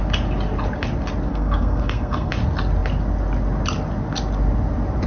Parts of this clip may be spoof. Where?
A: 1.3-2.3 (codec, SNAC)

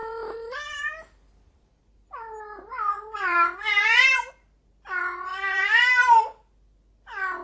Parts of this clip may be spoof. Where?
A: 0.0-4.3 (vocoder, BigVGAN v2); 5.3-6.2

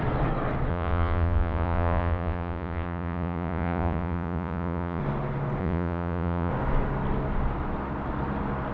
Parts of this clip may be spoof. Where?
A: 0.7-5.0 (vocoder, Vocos); 5.6-6.5

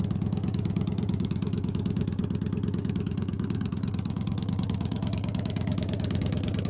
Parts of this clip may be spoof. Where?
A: 0.0-2.2 (codec, DAC); 2.7-6.7

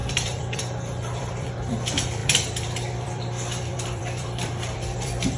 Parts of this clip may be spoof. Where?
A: 0.0-5.4 (vocoder, BigVGAN v2)